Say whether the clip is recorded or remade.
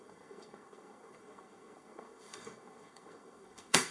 remade